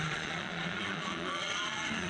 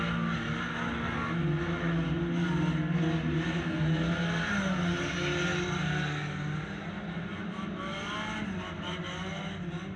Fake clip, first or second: first